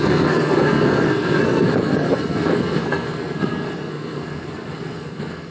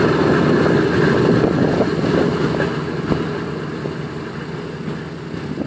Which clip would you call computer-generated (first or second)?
first